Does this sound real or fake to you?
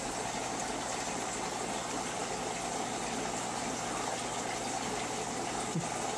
real